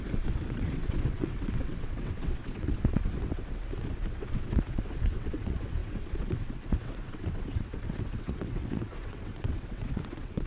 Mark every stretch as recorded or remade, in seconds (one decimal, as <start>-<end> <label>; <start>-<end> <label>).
0.0-10.5 remade